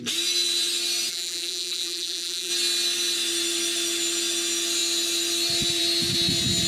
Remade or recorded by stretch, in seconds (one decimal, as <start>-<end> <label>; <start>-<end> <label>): 0.0-1.1 recorded; 1.1-2.5 remade; 2.5-6.7 recorded

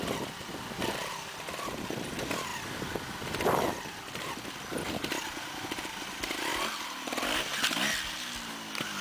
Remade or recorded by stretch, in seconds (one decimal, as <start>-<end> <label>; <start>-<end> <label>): 0.0-9.0 recorded

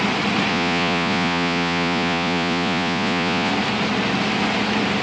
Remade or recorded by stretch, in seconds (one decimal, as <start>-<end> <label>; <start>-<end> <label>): 0.0-0.5 recorded; 0.5-3.5 remade; 3.5-5.0 recorded

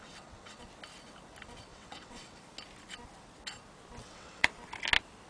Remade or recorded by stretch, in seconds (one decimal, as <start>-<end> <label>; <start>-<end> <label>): 0.0-0.6 remade; 0.6-1.7 recorded; 1.7-2.4 remade; 2.4-4.0 recorded; 4.0-4.5 remade; 4.5-5.3 recorded

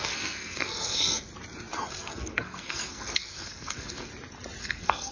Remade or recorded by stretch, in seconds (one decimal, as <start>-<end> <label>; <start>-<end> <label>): 0.0-1.3 remade; 1.3-1.9 recorded; 1.9-4.1 remade; 4.1-4.6 recorded; 4.6-5.1 remade

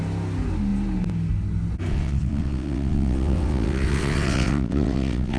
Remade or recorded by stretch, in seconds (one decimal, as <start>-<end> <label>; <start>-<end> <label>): 0.0-1.9 recorded; 1.9-5.4 remade

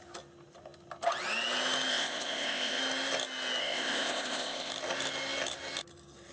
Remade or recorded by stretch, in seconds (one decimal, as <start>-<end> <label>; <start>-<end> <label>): 0.0-1.9 recorded; 1.9-2.8 remade; 2.8-3.6 recorded; 3.6-4.7 remade; 4.7-6.3 recorded

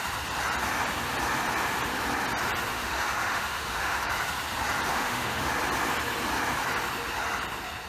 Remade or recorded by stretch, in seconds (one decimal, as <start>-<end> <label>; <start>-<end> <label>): 0.0-2.7 recorded; 2.7-4.1 remade; 4.1-4.9 recorded; 4.9-5.5 remade; 5.5-7.9 recorded